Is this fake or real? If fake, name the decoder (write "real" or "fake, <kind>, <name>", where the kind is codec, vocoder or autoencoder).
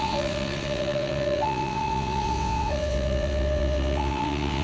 fake, vocoder, WaveNeXt